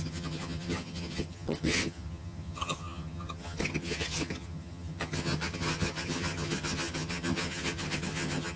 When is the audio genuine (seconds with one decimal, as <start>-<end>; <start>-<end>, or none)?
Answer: none